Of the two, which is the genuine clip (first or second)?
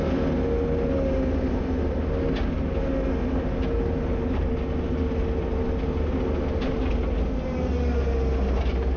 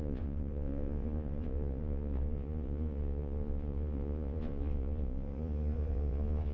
first